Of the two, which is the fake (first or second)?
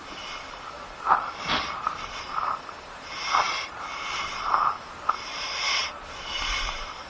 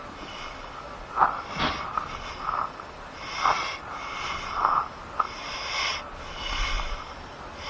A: first